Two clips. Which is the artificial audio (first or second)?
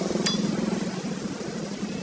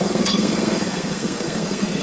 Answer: second